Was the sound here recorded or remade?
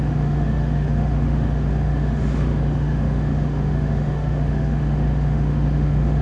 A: remade